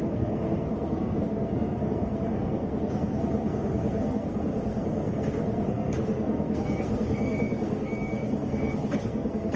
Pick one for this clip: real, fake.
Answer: fake